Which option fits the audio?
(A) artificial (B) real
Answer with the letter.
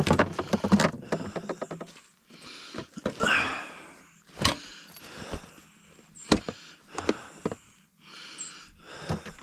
B